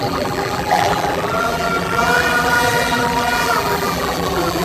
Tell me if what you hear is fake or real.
fake